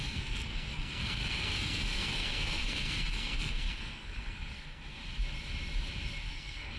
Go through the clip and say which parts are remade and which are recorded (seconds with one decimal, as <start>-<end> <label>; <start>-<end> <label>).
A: 0.0-5.0 remade; 5.0-6.3 recorded; 6.3-6.8 remade